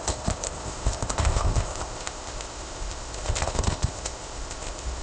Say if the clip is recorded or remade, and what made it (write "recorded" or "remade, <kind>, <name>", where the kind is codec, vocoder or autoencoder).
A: remade, codec, ZipCodec